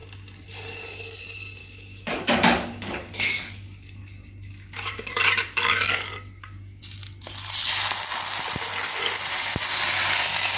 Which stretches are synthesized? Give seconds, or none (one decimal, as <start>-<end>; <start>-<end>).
1.6-6.8

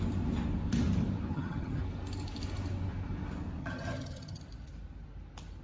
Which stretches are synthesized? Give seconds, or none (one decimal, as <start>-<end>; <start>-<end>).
1.3-1.8; 3.6-4.4

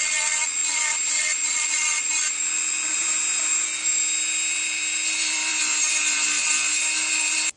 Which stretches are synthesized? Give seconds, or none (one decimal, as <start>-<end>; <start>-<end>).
0.6-2.1; 2.9-7.6

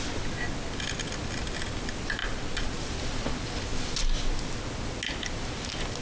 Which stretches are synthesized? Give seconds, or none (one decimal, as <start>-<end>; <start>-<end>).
none

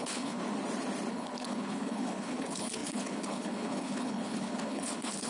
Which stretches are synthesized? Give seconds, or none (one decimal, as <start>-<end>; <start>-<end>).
0.0-0.4; 1.1-5.3

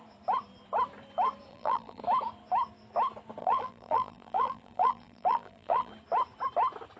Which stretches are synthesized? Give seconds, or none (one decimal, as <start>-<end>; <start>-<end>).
1.5-2.0; 3.4-5.9

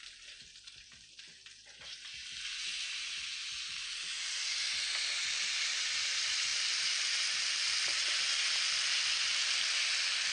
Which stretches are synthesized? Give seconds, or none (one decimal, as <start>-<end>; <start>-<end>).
0.0-2.2; 2.9-4.7; 6.0-6.5